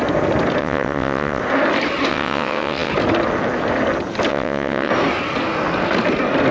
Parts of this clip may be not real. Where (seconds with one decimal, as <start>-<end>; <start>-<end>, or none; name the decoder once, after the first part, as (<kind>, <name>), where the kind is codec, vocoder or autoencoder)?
0.6-1.4 (vocoder, WaveNeXt); 2.1-2.9; 4.3-4.9